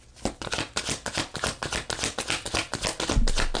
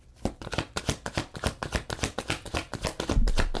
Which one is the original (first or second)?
first